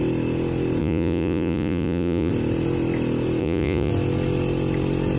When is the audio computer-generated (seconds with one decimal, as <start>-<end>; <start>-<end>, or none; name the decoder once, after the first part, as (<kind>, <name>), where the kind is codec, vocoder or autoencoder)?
0.8-2.3 (vocoder, Vocos); 3.4-3.9